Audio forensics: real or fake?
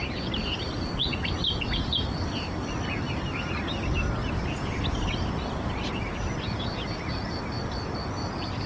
real